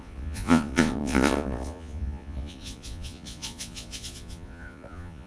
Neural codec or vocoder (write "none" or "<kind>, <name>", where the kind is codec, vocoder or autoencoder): vocoder, Vocos